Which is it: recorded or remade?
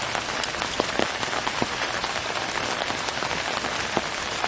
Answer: recorded